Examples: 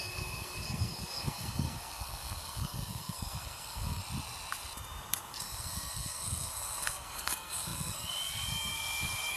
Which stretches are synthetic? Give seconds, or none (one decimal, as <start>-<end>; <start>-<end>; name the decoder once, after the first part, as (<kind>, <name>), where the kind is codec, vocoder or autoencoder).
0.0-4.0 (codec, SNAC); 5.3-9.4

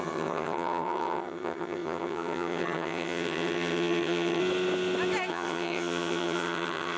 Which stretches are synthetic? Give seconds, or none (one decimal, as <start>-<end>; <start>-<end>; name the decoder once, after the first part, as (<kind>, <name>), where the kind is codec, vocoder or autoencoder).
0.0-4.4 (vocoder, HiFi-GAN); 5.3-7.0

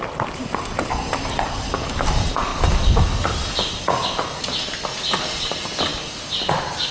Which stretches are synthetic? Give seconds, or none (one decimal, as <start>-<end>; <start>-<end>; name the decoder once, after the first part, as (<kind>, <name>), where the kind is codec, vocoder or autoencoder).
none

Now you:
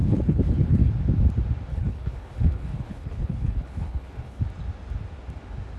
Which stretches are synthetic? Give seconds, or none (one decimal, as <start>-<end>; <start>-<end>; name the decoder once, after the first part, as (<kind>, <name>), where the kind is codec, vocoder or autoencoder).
0.0-0.9 (codec, HILCodec); 1.7-4.4

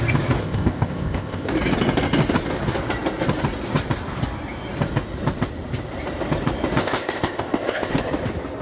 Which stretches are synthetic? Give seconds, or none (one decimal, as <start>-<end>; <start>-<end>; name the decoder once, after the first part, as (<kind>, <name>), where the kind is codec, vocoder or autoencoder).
0.4-1.5 (codec, ZipCodec); 6.8-7.9

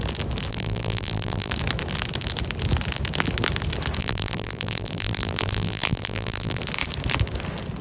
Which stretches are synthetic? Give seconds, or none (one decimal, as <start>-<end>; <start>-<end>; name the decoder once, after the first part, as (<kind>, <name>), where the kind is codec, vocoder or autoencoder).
0.5-1.5 (vocoder, BigVGAN v2); 4.0-6.6

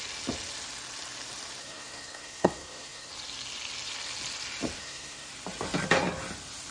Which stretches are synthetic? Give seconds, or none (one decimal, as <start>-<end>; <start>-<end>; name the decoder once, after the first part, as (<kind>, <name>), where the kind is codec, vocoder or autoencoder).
1.6-3.1 (codec, SNAC); 4.8-5.3

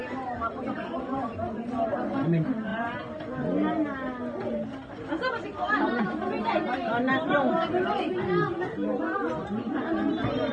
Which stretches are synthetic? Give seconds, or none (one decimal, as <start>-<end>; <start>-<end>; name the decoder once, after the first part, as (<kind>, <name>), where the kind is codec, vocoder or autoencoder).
none